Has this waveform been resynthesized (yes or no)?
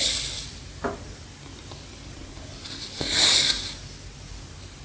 no